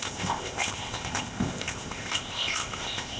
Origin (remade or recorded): remade